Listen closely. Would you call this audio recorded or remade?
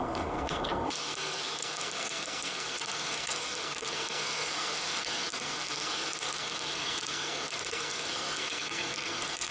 remade